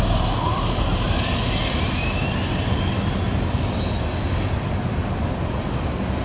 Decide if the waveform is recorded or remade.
recorded